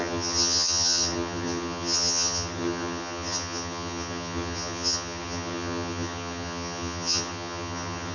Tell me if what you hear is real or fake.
fake